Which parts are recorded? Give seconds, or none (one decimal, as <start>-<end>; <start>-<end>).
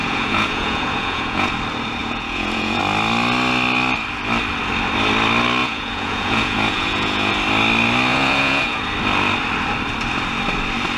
1.5-2.0; 2.8-5.6; 7.3-8.1; 8.8-11.0